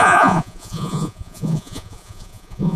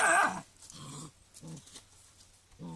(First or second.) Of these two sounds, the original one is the second